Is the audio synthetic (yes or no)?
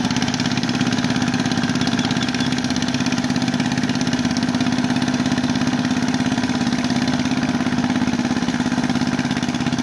no